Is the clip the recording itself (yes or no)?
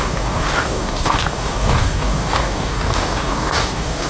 no